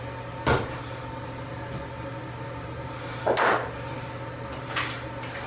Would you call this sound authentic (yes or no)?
yes